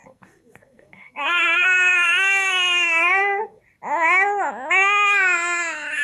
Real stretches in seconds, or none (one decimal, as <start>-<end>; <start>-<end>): 3.6-6.0